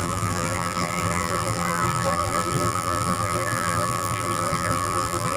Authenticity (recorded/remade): remade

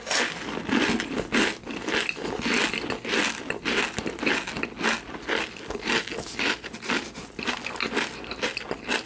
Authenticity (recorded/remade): recorded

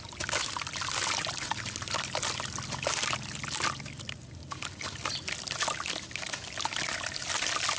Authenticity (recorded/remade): recorded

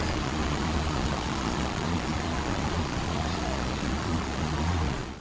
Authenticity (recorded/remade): remade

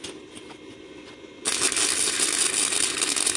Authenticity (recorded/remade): recorded